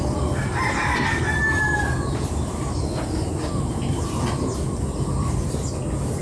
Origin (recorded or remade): recorded